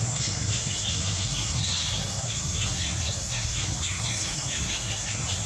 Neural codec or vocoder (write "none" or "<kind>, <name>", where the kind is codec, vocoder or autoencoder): codec, SNAC